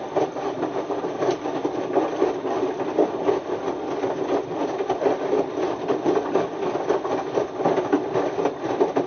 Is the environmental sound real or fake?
real